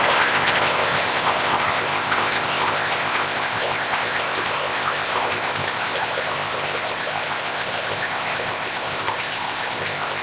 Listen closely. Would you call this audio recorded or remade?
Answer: remade